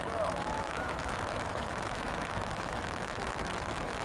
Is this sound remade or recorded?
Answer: remade